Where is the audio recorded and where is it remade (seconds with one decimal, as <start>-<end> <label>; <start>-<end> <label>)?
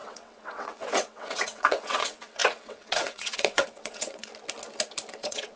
0.0-4.3 remade; 4.3-5.1 recorded; 5.1-5.6 remade